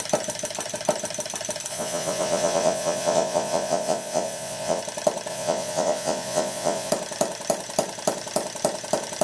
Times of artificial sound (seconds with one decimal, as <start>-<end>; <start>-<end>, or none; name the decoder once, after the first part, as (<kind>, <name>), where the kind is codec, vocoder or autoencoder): 1.7-4.8 (vocoder, Vocos); 5.3-6.9